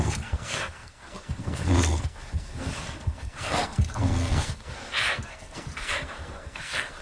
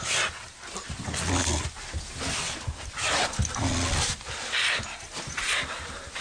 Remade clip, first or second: first